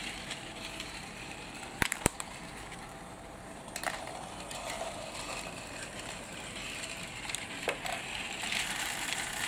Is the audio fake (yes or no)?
yes